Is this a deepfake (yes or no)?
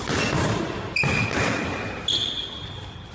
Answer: no